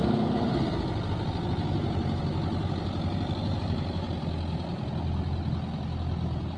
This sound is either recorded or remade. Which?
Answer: recorded